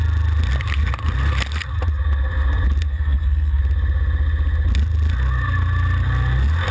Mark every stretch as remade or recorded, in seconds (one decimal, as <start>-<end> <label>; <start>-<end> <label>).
0.0-2.9 recorded; 2.9-3.6 remade; 3.6-6.7 recorded